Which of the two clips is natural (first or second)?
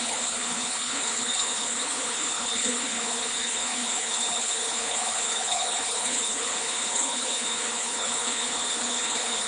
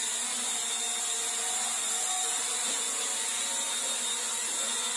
second